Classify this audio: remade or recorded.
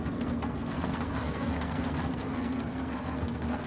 remade